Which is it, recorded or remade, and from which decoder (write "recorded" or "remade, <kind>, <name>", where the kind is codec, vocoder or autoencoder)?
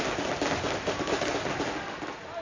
recorded